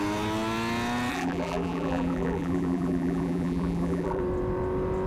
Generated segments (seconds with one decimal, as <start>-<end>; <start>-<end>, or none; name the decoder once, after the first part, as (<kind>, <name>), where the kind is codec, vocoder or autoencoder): 1.1-4.2 (vocoder, BigVGAN v2)